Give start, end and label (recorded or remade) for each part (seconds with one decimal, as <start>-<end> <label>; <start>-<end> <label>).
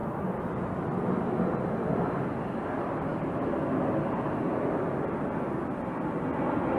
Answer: 0.0-6.8 recorded